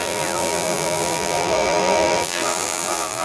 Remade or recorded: remade